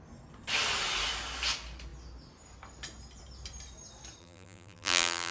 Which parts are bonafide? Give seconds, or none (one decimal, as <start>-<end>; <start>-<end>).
0.0-4.2